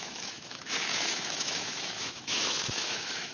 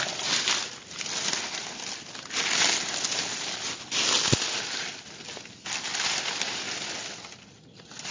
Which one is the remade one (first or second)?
first